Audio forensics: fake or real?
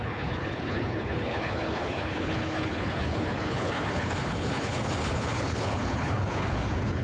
fake